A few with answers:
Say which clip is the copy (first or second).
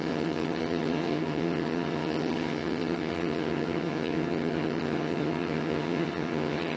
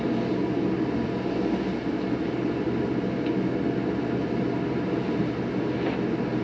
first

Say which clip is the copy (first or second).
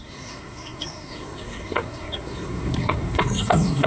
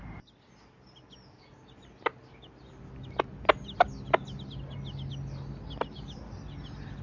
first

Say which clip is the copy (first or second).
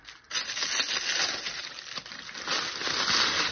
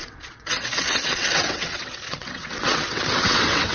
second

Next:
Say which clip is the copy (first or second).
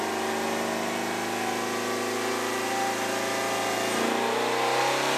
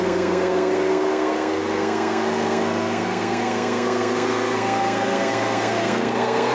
second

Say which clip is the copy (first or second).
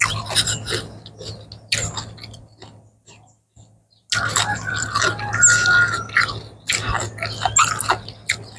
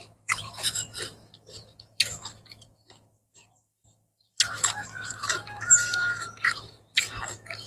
second